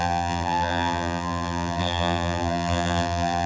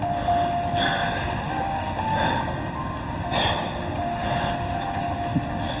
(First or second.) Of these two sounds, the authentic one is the second